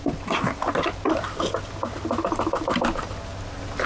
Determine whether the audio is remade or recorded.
recorded